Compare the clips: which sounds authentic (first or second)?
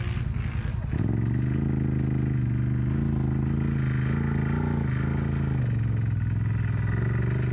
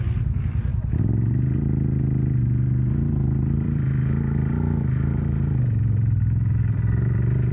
first